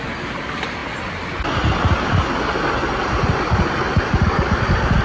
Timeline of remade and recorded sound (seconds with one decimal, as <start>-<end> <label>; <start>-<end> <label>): 0.0-5.0 recorded